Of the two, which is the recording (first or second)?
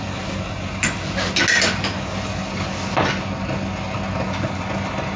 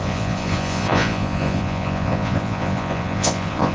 first